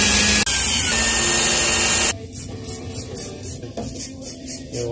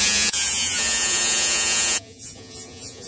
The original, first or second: first